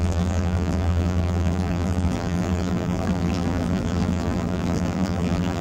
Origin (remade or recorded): remade